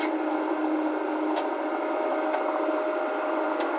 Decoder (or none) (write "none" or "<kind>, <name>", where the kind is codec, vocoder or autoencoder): none